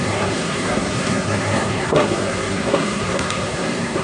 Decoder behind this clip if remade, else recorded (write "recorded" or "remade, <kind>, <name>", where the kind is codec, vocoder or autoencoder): remade, codec, SNAC